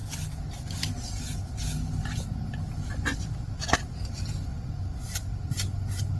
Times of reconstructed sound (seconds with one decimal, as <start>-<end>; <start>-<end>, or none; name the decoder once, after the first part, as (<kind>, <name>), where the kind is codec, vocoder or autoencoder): 0.0-3.7 (vocoder, BigVGAN v2); 4.5-5.1